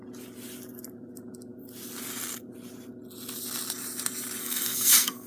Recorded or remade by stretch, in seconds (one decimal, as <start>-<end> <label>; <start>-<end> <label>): 0.0-4.4 recorded; 4.4-5.3 remade